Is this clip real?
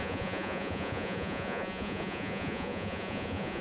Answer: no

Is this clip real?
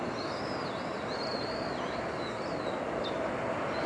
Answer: yes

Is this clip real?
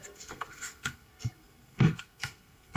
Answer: no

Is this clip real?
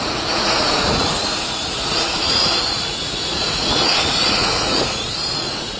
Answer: no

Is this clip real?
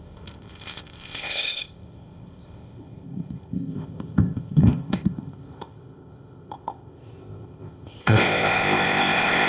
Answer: no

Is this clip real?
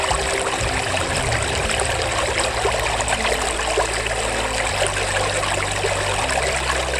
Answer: yes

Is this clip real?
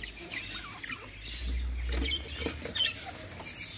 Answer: yes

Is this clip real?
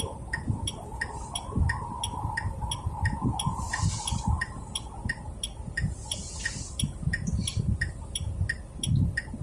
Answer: yes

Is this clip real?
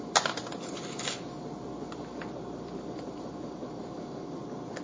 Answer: yes